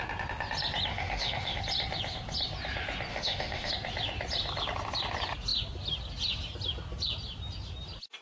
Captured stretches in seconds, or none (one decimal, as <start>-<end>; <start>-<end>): 0.0-0.9; 1.6-3.1; 3.7-8.2